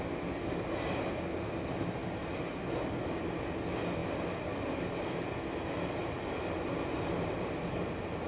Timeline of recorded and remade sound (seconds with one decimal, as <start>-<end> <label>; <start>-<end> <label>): 0.0-8.3 recorded

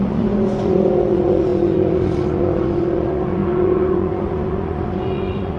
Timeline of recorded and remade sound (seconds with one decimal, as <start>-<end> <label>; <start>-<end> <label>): 0.0-5.6 remade